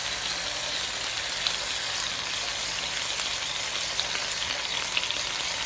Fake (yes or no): no